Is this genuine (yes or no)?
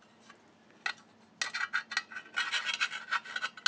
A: yes